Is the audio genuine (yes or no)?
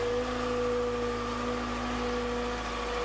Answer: yes